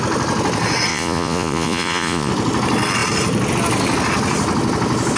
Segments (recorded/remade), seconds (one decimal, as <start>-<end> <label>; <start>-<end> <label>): 0.0-0.9 recorded; 0.9-2.3 remade; 2.3-5.2 recorded